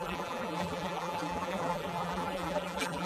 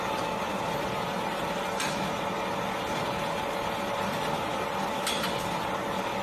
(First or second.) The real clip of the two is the second